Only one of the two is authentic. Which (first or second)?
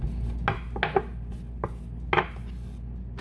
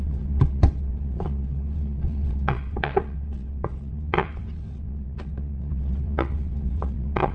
first